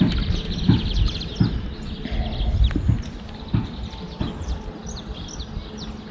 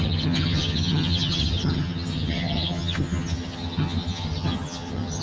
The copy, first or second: second